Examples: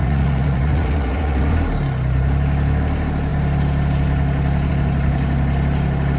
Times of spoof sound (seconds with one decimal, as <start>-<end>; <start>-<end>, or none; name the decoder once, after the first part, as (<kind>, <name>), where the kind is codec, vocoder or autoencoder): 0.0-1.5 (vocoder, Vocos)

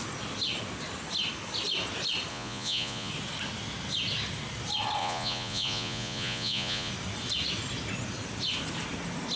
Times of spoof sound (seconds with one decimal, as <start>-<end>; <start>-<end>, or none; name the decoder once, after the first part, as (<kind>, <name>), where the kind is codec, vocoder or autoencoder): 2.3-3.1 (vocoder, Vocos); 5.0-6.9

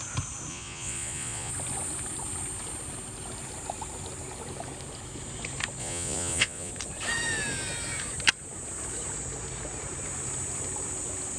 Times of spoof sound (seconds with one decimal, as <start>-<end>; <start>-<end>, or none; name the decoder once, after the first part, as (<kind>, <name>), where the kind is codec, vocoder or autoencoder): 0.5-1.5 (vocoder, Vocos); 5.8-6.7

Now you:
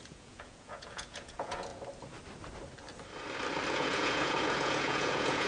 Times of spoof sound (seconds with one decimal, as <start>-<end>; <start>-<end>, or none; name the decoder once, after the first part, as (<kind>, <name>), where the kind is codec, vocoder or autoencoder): 0.0-1.7 (vocoder, Vocos); 3.7-5.5